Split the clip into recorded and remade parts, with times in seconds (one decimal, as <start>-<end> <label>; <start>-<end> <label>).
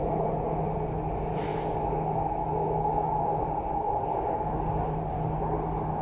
0.0-6.0 recorded